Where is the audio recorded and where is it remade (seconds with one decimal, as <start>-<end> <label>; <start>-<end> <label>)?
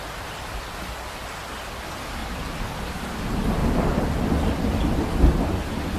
0.0-6.0 recorded